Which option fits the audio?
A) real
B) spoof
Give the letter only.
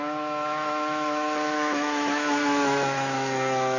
B